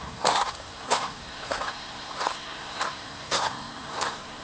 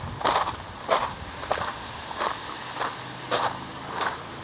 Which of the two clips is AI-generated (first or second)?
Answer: first